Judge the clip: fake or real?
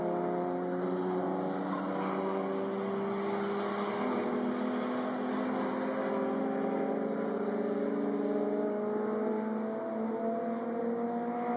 real